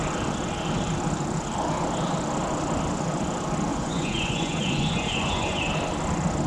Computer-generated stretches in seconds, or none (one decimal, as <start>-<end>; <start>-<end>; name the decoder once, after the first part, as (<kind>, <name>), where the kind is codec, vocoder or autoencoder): 3.7-5.7 (vocoder, Vocos)